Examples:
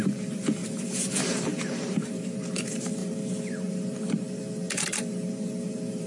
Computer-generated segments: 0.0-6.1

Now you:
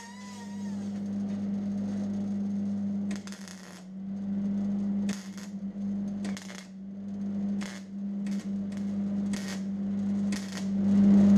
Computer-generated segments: none

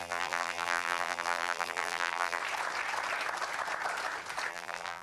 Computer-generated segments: 0.0-2.4; 4.5-5.0

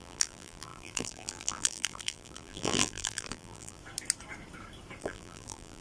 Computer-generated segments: 0.0-3.8; 5.0-5.8